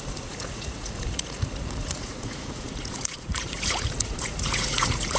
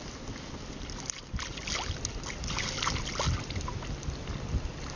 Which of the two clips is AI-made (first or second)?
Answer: first